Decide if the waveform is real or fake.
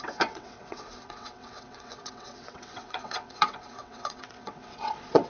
fake